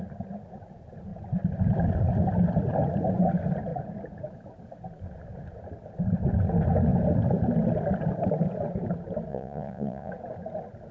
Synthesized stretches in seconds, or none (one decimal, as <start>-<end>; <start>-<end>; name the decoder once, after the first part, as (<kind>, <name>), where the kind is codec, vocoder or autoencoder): 9.3-10.1 (vocoder, Vocos)

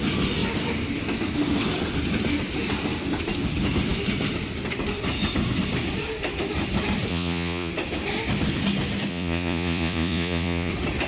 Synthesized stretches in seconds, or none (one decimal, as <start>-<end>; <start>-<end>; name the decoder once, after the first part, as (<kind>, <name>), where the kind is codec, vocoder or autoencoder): 7.1-7.7 (vocoder, Vocos); 9.1-10.7

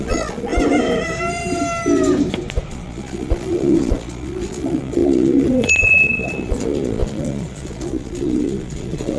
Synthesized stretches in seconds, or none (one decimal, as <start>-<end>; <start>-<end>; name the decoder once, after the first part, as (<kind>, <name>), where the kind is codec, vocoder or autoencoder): 0.0-0.5 (vocoder, Vocos); 2.7-9.2

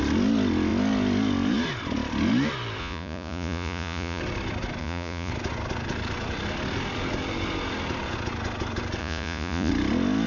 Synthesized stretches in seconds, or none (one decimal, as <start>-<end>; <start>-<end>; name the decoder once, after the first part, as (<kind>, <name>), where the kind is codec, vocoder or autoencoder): 2.8-4.2 (vocoder, Vocos); 4.8-5.3; 9.0-9.7

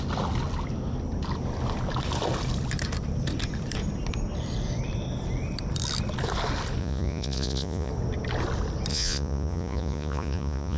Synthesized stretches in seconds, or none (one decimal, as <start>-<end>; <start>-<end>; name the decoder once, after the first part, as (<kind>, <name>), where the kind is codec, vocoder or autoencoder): 6.8-7.9 (vocoder, Vocos); 8.9-10.8

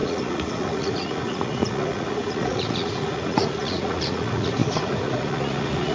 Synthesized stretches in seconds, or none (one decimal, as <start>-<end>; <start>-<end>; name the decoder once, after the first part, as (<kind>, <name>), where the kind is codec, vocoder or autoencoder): 0.0-5.9 (vocoder, Vocos)

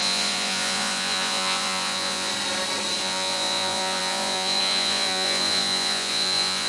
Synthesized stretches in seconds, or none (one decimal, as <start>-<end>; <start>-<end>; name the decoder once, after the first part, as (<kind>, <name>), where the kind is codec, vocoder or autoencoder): 0.0-2.3 (vocoder, Vocos); 3.0-6.7

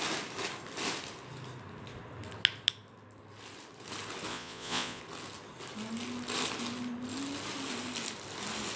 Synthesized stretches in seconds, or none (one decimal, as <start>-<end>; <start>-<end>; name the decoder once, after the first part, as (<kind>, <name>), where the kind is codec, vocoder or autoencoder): 4.3-5.0 (vocoder, Vocos)